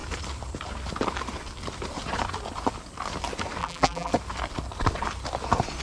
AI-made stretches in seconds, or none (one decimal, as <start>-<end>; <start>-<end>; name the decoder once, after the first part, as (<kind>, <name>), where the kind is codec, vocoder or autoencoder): 3.6-4.1 (vocoder, BigVGAN v2)